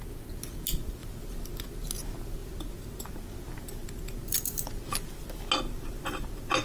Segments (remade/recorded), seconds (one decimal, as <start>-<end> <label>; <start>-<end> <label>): 0.0-6.6 recorded